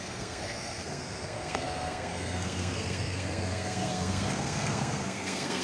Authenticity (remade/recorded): remade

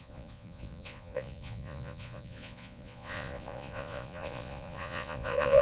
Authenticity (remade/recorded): remade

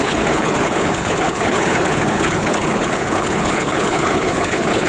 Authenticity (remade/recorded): remade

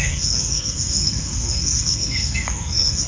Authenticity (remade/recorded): remade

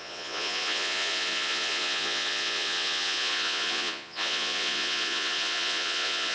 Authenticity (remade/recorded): remade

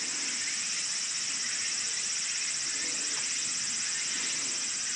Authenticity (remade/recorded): recorded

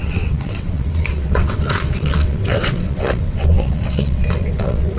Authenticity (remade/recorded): remade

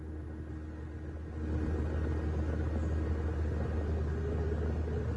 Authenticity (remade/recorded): recorded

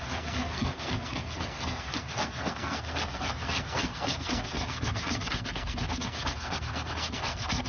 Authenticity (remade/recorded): remade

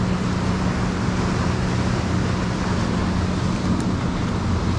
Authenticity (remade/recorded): recorded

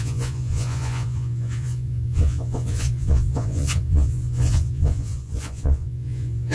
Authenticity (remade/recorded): remade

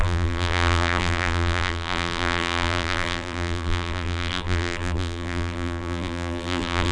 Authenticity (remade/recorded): remade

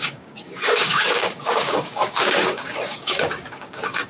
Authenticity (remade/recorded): remade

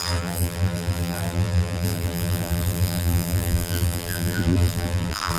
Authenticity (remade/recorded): remade